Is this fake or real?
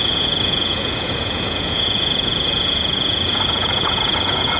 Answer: fake